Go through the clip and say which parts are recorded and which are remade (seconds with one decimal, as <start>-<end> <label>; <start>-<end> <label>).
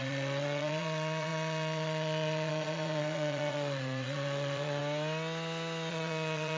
0.0-4.8 remade; 4.8-5.9 recorded; 5.9-6.6 remade